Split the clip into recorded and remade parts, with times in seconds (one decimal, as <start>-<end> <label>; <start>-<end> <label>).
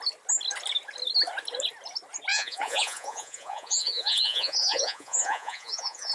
0.0-2.3 recorded; 2.3-6.1 remade